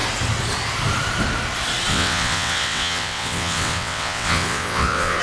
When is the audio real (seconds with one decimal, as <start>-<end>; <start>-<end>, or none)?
0.0-1.9